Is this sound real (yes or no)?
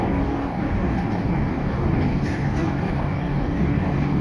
no